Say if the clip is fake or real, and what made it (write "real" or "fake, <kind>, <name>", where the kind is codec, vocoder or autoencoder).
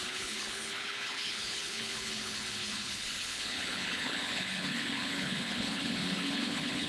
fake, codec, HILCodec